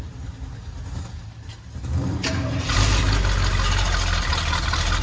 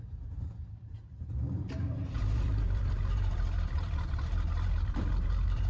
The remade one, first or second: second